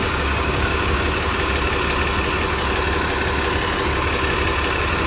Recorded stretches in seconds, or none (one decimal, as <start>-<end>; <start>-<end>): 1.5-5.1